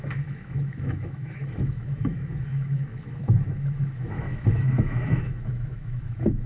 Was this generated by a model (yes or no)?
yes